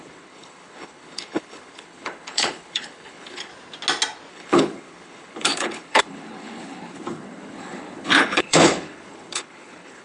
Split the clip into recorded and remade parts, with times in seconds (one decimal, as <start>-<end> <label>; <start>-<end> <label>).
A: 0.0-3.5 remade; 3.5-4.3 recorded; 4.3-10.0 remade